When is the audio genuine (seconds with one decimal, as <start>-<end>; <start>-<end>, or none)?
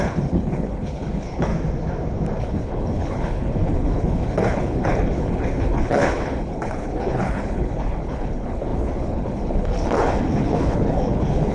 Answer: 1.5-2.4